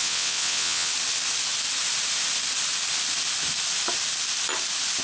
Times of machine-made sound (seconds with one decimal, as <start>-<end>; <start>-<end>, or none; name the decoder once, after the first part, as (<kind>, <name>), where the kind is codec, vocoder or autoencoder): 0.0-0.9 (vocoder, WaveNeXt)